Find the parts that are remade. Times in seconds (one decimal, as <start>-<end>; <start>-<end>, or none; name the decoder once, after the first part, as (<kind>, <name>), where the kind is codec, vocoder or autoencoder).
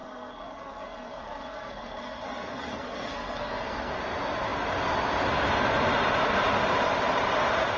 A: 0.0-4.0 (codec, SNAC)